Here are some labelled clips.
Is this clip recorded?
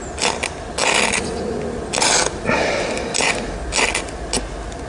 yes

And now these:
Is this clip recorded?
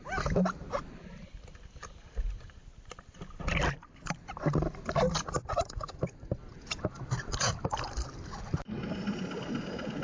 yes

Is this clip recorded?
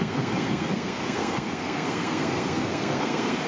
no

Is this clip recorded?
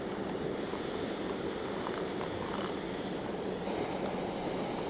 yes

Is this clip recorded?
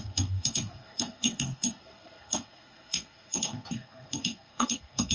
no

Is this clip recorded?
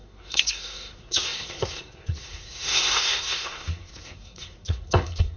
no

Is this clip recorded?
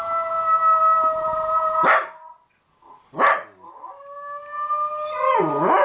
yes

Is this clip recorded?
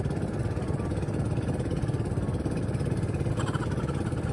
yes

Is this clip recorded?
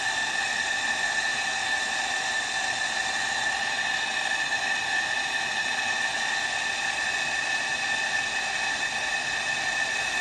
yes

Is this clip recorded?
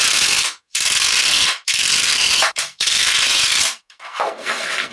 no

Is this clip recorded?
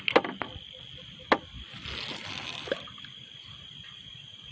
yes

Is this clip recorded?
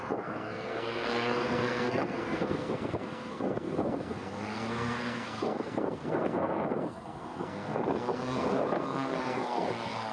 no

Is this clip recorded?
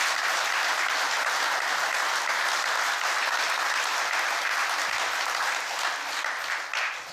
yes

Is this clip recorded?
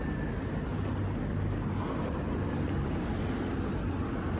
yes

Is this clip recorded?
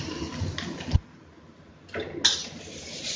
yes